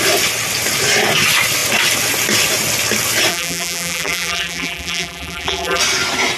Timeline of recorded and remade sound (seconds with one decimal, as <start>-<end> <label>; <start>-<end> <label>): 0.0-3.3 recorded; 3.3-5.8 remade; 5.8-6.4 recorded